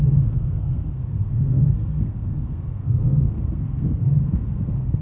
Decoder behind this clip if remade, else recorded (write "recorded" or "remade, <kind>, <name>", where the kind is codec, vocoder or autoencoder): remade, codec, SNAC